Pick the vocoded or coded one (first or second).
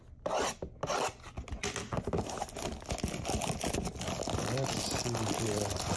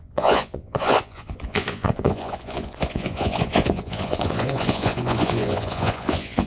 second